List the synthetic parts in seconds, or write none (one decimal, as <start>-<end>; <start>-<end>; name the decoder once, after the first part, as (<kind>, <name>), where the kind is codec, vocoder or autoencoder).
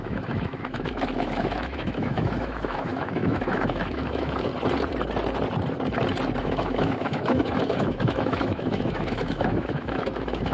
0.0-4.5 (autoencoder, DAC-VAE); 6.4-10.5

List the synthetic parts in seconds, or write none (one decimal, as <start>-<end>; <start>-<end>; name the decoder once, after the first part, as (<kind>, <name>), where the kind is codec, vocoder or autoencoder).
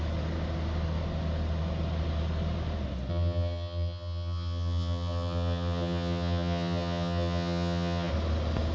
3.1-8.1 (vocoder, HiFi-GAN)